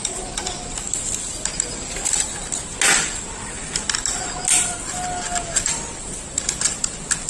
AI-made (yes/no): no